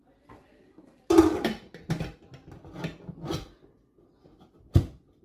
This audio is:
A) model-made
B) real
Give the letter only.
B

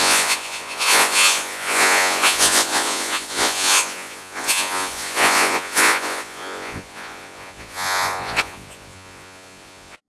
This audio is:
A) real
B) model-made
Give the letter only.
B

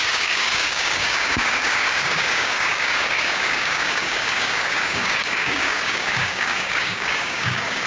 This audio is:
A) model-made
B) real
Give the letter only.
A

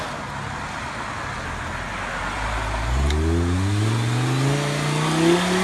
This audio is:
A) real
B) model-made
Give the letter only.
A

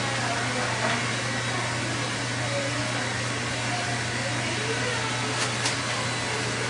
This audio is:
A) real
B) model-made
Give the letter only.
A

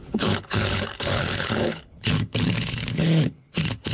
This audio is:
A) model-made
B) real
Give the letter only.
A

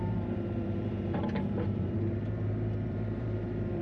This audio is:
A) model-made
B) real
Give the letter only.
A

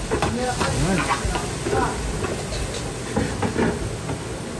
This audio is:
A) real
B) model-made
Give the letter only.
A